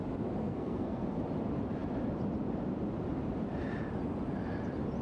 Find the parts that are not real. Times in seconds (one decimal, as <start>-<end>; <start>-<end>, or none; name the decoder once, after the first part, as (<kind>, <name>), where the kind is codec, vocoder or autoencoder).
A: 0.4-1.2 (codec, SNAC)